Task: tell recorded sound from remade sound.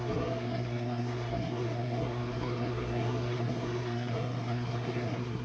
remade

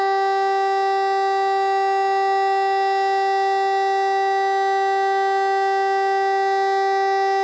recorded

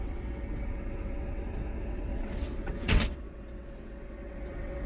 remade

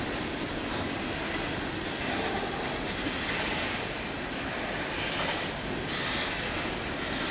recorded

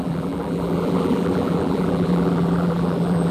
remade